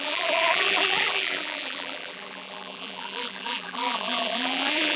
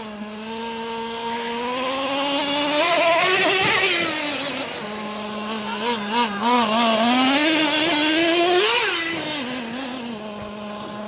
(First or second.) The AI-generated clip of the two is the first